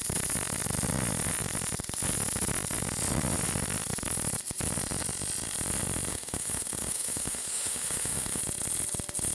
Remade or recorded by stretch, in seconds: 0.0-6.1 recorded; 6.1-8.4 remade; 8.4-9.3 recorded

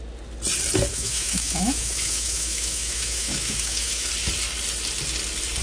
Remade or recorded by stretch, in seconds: 0.0-0.9 recorded; 0.9-4.1 remade; 4.1-5.6 recorded